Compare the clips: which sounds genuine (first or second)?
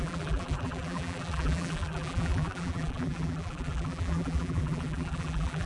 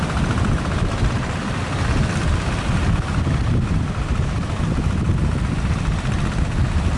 second